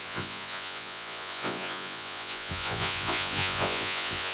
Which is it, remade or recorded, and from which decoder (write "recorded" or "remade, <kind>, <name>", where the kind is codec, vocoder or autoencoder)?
remade, vocoder, Vocos